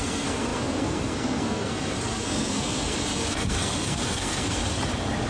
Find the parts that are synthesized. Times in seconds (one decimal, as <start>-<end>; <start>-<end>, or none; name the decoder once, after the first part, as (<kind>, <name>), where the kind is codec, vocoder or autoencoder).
0.0-4.6 (codec, SNAC)